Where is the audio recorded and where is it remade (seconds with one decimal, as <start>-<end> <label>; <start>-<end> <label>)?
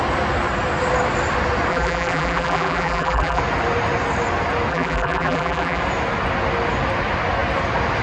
0.0-1.7 recorded; 1.7-3.4 remade; 3.4-4.7 recorded; 4.7-5.8 remade; 5.8-8.0 recorded